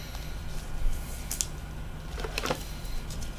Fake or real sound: real